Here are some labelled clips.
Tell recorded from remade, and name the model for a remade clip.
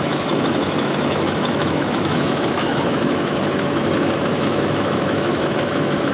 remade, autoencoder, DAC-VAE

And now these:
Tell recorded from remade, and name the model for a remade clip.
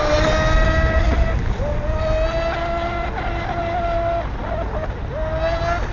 recorded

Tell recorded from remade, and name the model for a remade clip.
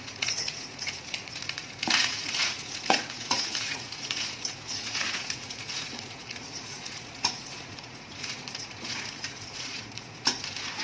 remade, vocoder, Vocos